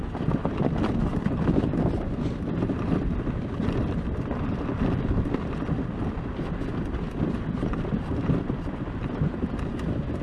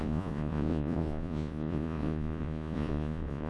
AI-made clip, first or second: second